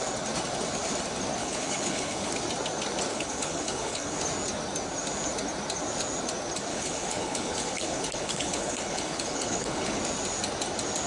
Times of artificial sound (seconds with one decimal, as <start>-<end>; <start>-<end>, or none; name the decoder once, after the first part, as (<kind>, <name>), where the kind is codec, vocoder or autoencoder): 1.4-2.3 (codec, HILCodec); 3.1-4.2; 6.7-10.0